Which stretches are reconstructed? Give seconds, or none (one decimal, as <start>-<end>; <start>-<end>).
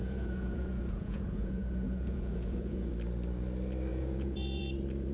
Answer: 0.0-2.9; 3.9-4.6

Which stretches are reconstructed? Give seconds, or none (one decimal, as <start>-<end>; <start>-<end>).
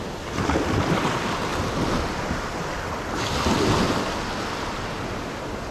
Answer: none